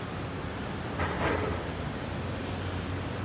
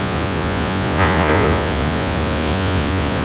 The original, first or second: first